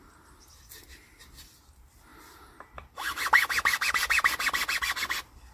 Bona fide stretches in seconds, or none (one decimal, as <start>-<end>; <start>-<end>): 0.0-5.5